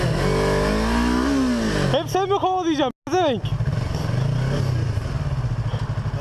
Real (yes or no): yes